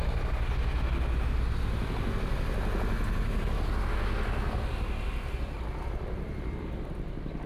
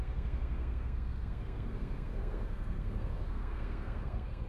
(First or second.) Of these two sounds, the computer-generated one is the second